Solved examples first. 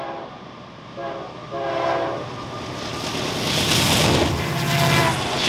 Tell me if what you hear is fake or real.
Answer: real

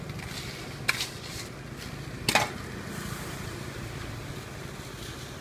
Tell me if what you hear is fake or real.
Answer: real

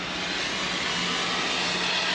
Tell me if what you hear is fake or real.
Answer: real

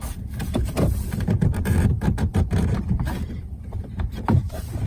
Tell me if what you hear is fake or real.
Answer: fake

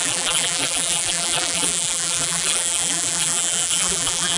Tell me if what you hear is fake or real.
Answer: fake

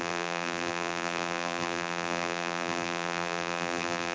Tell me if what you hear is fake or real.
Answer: fake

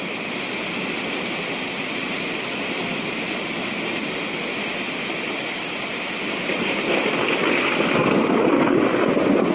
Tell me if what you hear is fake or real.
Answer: real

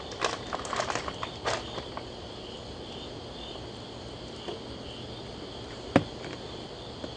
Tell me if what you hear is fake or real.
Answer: real